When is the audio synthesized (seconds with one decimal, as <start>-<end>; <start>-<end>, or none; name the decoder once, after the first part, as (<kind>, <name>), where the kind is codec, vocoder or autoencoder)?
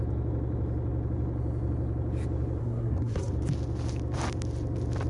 2.6-3.3 (codec, SNAC)